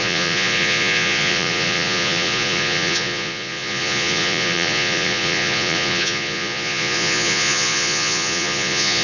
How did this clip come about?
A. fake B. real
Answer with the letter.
A